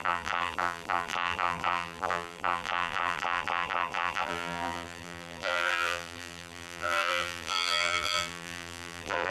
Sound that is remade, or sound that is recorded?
remade